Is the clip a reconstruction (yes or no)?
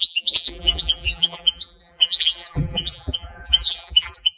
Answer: yes